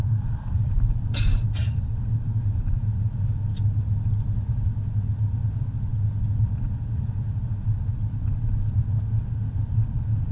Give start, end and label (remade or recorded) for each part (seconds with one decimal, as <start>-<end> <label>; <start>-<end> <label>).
0.0-2.1 recorded; 2.1-3.2 remade; 3.2-10.3 recorded